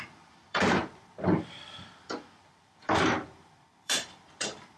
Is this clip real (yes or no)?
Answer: no